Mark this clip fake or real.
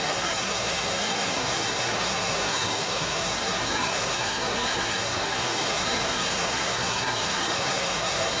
fake